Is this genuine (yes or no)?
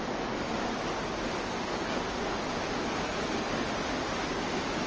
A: yes